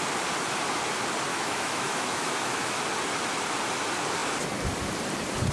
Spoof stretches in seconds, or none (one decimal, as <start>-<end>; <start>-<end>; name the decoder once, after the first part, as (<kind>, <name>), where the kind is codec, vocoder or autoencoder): 1.3-2.8 (autoencoder, DAC-VAE)